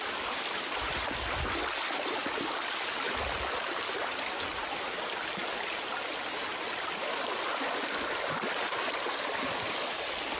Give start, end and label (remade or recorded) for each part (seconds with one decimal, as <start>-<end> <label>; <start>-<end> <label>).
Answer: 0.0-10.4 recorded